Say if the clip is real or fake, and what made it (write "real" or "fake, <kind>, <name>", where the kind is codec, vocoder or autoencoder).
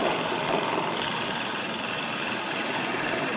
fake, vocoder, BigVGAN v2